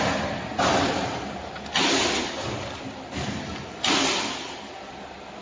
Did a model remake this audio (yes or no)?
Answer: no